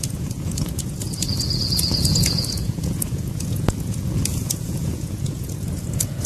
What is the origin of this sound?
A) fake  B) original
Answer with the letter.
A